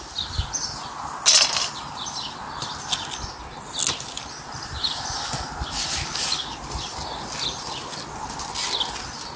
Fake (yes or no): no